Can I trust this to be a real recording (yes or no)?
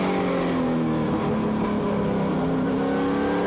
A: yes